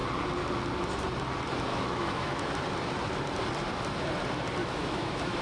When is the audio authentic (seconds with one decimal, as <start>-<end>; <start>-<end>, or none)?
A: 0.0-1.7; 2.5-4.6

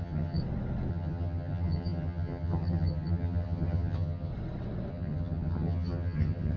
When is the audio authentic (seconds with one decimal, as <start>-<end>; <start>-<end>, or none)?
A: 0.4-0.9; 4.3-4.9

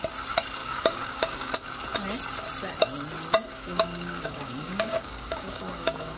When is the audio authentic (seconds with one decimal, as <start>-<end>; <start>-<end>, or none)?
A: 0.0-0.6; 1.5-3.5

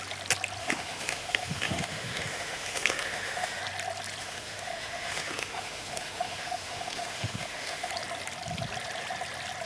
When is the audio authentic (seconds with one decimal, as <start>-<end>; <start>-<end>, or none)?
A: 0.0-0.6; 3.6-4.2; 7.9-9.7

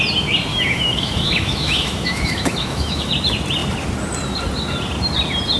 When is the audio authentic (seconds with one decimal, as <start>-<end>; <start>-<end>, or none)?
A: 0.0-0.5; 3.1-5.6

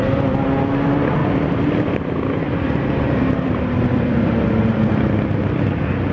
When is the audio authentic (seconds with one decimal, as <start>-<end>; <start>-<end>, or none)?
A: 0.0-1.2; 4.9-6.1

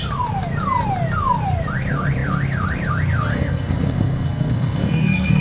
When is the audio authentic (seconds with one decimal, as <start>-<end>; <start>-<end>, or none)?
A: 0.0-3.3